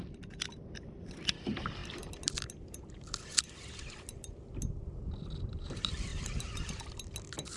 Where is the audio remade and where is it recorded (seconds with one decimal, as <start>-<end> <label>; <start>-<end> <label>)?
0.0-6.1 recorded; 6.1-6.9 remade; 6.9-7.6 recorded